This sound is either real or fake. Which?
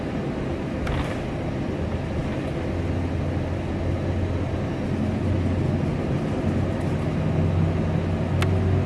real